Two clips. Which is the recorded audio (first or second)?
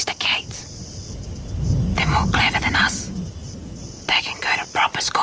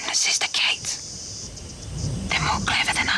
first